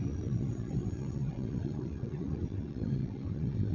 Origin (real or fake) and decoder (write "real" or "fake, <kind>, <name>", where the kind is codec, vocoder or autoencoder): fake, vocoder, WaveNeXt